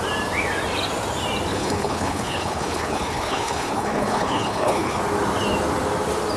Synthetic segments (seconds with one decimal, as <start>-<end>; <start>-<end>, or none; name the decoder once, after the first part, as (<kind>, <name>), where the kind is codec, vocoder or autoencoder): 1.5-5.0 (codec, HILCodec)

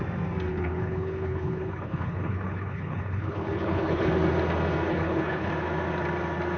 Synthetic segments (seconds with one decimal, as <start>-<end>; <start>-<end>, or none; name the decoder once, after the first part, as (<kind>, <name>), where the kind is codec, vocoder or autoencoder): 0.5-4.1 (codec, HILCodec); 4.9-5.5